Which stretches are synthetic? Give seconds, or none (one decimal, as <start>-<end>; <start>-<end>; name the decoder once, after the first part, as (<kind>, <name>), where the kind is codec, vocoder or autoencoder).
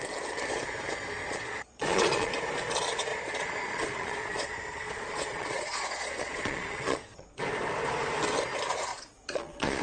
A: 1.2-2.3 (vocoder, Vocos); 3.1-7.4; 8.9-9.8